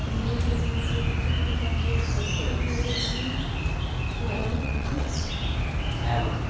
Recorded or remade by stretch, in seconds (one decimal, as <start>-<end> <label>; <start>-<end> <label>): 0.0-4.4 recorded; 4.4-5.3 remade; 5.3-6.5 recorded